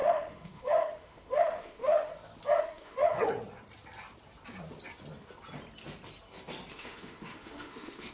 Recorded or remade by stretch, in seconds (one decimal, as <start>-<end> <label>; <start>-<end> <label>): 0.0-2.1 remade; 2.1-2.6 recorded; 2.6-3.1 remade; 3.1-6.7 recorded; 6.7-8.1 remade